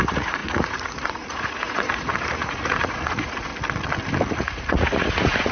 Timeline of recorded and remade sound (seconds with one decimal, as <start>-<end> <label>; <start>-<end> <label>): 0.0-3.5 remade; 3.5-4.3 recorded; 4.3-5.5 remade